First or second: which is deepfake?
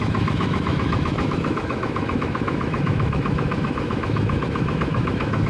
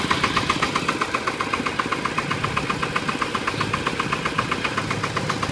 first